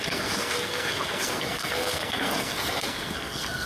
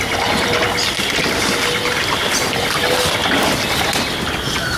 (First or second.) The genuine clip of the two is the second